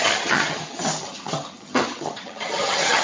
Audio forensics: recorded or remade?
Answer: remade